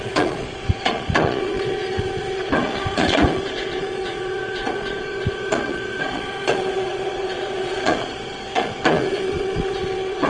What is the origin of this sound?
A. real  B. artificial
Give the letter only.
B